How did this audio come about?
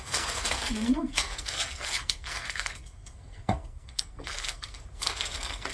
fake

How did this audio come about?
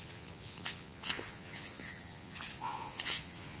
fake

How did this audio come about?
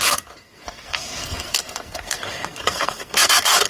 fake